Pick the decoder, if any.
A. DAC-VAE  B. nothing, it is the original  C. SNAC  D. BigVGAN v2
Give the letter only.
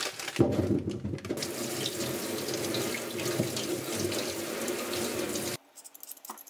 B